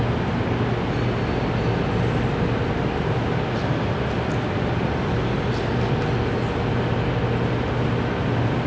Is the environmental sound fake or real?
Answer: real